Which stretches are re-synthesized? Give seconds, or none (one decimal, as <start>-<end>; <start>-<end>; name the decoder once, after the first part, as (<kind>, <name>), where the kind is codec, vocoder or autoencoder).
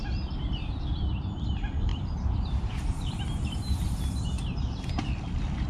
1.9-4.9 (vocoder, BigVGAN v2)